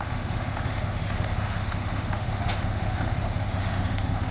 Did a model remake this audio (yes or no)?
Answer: yes